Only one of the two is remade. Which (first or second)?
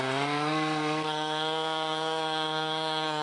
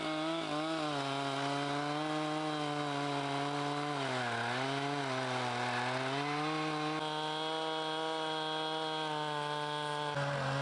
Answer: first